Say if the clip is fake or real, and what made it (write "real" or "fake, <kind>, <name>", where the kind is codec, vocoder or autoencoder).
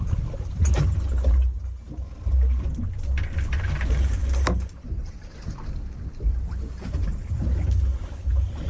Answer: real